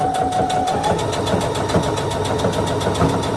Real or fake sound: fake